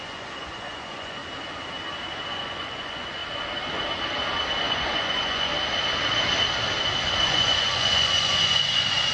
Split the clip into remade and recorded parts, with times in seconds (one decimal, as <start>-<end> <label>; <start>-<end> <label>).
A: 0.0-1.2 remade; 1.2-2.3 recorded; 2.3-3.2 remade; 3.2-4.6 recorded; 4.6-5.5 remade; 5.5-7.2 recorded; 7.2-9.1 remade